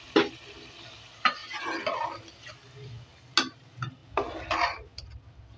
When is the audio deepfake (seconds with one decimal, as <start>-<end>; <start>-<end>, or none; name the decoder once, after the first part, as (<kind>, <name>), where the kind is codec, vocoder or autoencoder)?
1.4-2.5 (vocoder, BigVGAN v2)